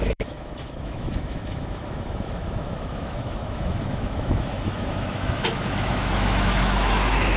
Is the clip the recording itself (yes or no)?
no